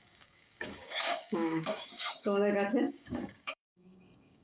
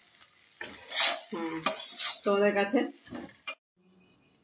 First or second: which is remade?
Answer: first